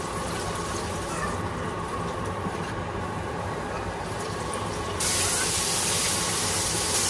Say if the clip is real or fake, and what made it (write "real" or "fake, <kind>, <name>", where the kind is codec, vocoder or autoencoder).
real